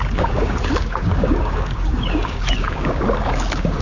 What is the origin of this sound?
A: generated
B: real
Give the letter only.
A